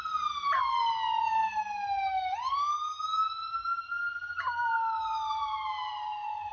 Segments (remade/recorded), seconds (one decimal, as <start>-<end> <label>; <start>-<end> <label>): 0.0-6.5 recorded